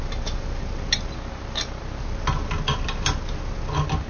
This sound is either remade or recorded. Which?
recorded